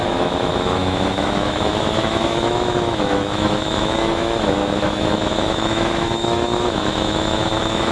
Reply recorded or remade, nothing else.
remade